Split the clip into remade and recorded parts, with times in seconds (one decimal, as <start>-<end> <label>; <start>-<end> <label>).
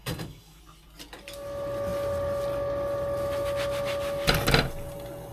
0.0-0.6 remade; 0.6-5.3 recorded